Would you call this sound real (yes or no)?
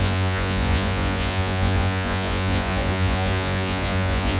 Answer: no